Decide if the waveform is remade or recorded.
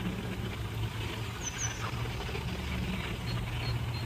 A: recorded